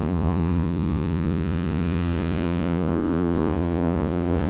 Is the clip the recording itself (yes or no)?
no